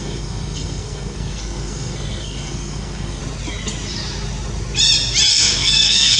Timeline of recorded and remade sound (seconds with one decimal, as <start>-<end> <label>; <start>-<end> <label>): 0.0-3.2 remade; 3.2-5.3 recorded; 5.3-6.2 remade